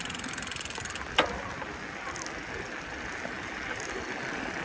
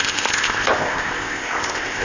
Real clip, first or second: first